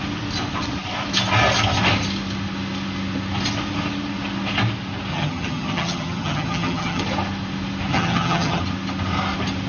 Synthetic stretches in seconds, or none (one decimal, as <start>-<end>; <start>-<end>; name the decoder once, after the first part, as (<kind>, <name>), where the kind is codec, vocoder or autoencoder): 5.1-7.0 (vocoder, HiFi-GAN); 7.9-8.6